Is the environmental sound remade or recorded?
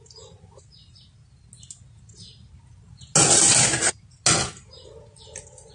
recorded